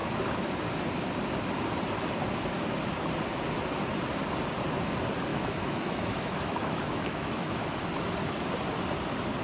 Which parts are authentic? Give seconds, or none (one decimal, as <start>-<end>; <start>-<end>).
0.0-5.3; 7.8-9.4